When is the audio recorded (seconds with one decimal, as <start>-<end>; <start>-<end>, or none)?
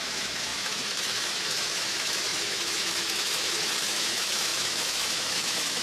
none